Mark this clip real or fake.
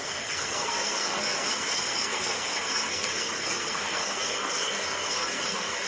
fake